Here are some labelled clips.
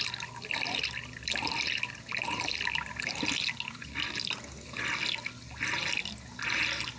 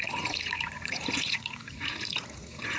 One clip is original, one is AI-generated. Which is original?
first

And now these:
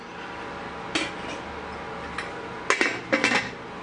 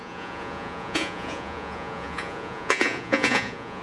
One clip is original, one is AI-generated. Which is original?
first